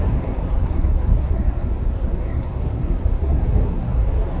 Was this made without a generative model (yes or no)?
no